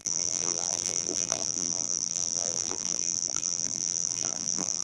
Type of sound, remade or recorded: remade